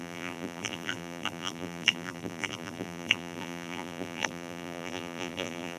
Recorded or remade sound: remade